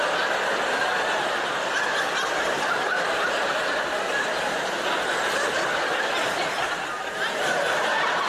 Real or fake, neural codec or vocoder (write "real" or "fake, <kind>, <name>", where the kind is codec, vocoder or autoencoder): real